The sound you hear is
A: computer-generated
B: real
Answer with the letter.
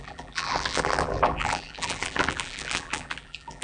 A